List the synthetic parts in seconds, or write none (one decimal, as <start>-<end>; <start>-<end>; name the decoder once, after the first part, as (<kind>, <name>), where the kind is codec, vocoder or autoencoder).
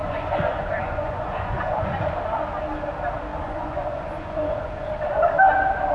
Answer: 0.0-1.9 (vocoder, Vocos); 3.3-4.9